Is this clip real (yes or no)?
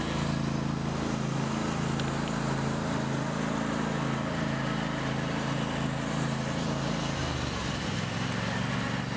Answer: yes